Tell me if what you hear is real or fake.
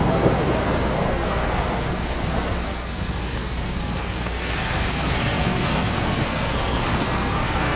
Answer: fake